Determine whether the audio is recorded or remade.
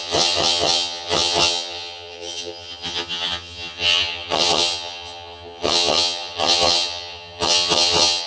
remade